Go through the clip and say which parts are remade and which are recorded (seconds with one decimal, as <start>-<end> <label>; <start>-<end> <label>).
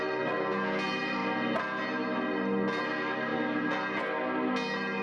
0.0-5.0 recorded